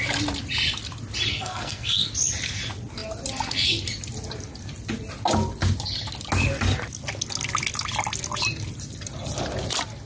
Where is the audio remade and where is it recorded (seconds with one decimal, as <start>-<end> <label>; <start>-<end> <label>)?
0.0-1.3 recorded; 1.3-2.1 remade; 2.1-10.1 recorded